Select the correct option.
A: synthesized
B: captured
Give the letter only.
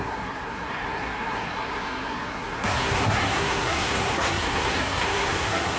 A